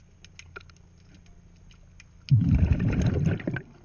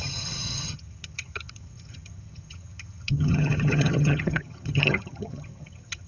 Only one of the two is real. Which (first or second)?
first